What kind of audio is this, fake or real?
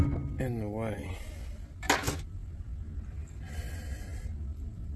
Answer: real